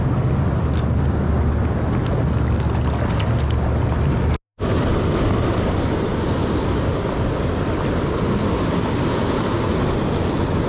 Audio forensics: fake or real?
real